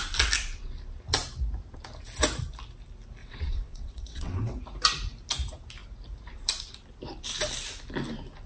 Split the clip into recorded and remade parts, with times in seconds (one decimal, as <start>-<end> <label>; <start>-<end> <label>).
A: 0.0-3.2 recorded; 3.2-4.6 remade; 4.6-8.5 recorded